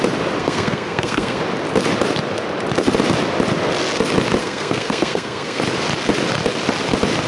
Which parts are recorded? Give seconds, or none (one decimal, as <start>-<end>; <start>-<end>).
0.0-0.4; 1.4-4.4; 5.6-7.3